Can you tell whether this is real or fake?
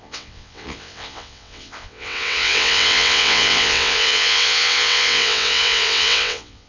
fake